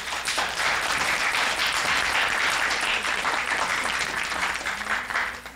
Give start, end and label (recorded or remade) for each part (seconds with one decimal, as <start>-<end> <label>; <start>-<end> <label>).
0.0-1.6 remade; 1.6-2.6 recorded; 2.6-5.6 remade